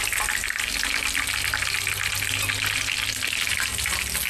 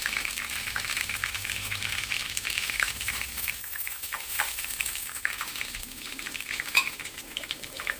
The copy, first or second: second